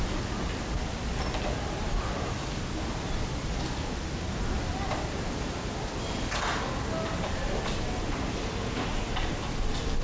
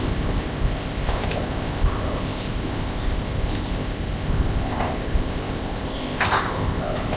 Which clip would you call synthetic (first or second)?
second